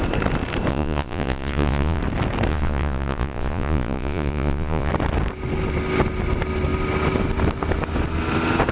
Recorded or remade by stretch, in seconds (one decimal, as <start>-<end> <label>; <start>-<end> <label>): 0.0-0.7 recorded; 0.7-2.0 remade; 2.0-2.5 recorded; 2.5-4.9 remade; 4.9-8.7 recorded